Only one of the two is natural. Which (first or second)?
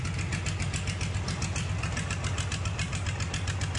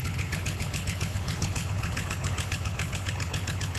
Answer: first